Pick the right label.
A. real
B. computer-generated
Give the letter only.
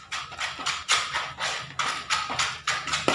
A